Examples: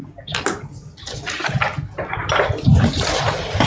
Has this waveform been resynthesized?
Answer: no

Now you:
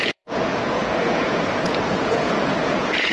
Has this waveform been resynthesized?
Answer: yes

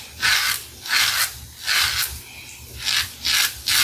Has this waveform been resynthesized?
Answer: no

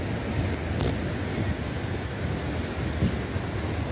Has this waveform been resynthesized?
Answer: no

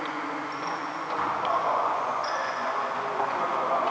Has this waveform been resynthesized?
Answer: yes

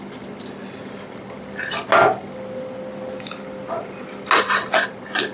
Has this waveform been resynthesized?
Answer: no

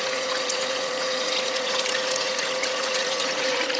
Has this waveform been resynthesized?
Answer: yes